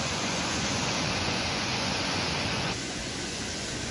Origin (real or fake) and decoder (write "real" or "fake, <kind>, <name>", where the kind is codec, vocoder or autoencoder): fake, vocoder, Vocos